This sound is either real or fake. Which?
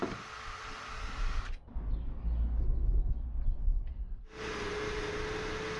real